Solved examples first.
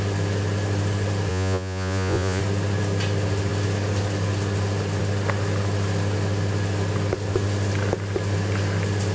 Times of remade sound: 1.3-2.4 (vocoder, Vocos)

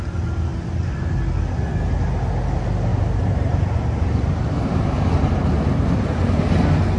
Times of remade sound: 2.9-6.2 (vocoder, BigVGAN v2)

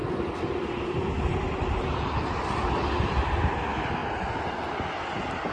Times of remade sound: none

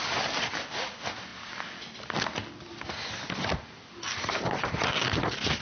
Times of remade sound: none

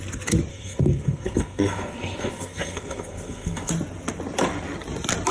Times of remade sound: 0.5-3.7 (codec, SNAC)

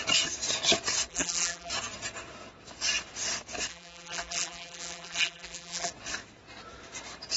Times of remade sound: 1.1-1.7 (vocoder, BigVGAN v2); 3.7-5.9

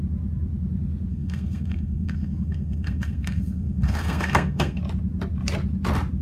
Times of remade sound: 1.1-4.8 (codec, SNAC)

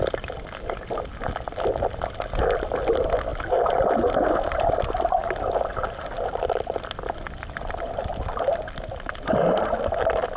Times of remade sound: none